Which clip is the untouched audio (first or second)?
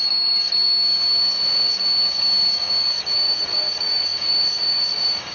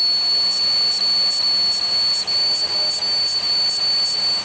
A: second